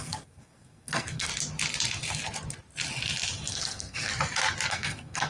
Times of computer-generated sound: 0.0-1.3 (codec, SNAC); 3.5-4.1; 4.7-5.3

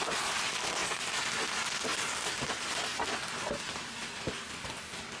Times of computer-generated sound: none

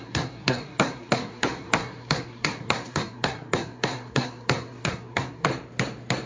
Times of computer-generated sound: 0.0-5.5 (codec, SNAC)